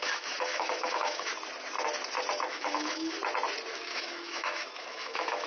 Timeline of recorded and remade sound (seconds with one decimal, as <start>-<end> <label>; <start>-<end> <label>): 0.0-1.3 remade; 1.3-2.5 recorded; 2.5-3.2 remade; 3.2-3.7 recorded; 3.7-5.5 remade